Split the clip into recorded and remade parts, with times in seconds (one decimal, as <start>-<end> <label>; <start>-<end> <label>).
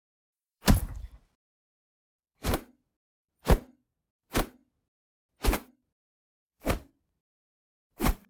0.0-4.6 remade; 4.6-5.5 recorded; 5.5-8.3 remade